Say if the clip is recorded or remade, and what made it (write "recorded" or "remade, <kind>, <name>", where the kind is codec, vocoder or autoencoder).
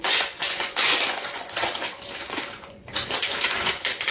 remade, vocoder, Vocos